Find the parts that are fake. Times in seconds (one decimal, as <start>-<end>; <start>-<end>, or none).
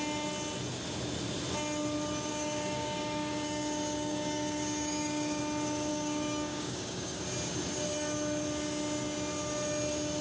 2.3-5.4; 5.9-7.2